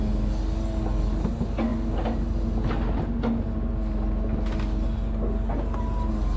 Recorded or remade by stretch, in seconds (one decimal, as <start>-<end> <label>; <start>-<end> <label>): 0.0-6.4 recorded

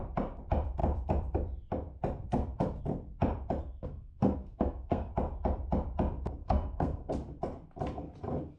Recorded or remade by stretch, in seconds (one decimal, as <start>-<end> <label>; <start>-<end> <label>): 0.0-3.6 recorded; 3.6-5.1 remade; 5.1-6.4 recorded; 6.4-7.1 remade; 7.1-8.6 recorded